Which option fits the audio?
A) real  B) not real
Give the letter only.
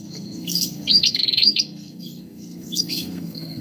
B